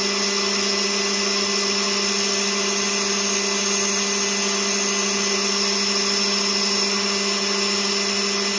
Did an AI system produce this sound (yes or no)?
no